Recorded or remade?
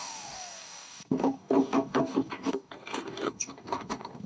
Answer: remade